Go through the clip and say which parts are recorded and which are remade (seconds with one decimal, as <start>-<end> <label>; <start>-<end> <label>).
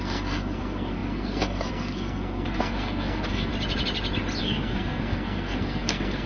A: 0.0-3.5 remade; 3.5-4.4 recorded; 4.4-6.3 remade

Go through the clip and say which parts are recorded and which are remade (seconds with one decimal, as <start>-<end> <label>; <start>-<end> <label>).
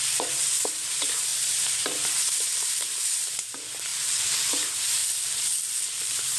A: 0.0-5.0 remade; 5.0-6.0 recorded; 6.0-6.4 remade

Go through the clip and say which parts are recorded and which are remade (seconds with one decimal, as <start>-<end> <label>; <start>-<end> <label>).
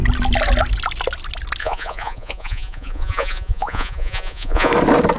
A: 0.0-1.6 recorded; 1.6-4.7 remade; 4.7-5.2 recorded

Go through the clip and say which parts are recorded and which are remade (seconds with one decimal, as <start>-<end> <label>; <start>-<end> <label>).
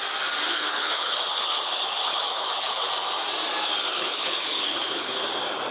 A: 0.0-0.5 recorded; 0.5-2.9 remade; 2.9-3.9 recorded; 3.9-5.3 remade; 5.3-5.7 recorded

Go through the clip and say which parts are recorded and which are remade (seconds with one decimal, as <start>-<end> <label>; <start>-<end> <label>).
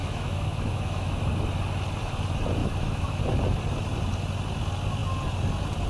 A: 0.0-1.2 remade; 1.2-2.6 recorded; 2.6-3.2 remade; 3.2-5.9 recorded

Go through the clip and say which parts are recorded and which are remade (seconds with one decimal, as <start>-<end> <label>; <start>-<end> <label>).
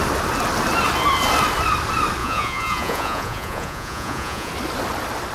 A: 0.0-2.2 recorded; 2.2-4.5 remade; 4.5-5.3 recorded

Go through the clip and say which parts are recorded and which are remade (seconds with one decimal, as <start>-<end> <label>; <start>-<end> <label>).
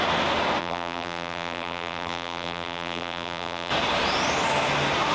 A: 0.0-0.6 recorded; 0.6-3.7 remade; 3.7-5.1 recorded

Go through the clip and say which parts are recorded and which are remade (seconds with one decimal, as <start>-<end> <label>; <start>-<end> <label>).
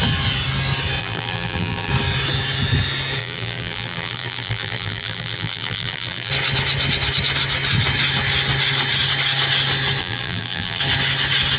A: 0.0-1.0 recorded; 1.0-1.9 remade; 1.9-3.2 recorded; 3.2-6.3 remade; 6.3-10.0 recorded; 10.0-10.8 remade; 10.8-11.6 recorded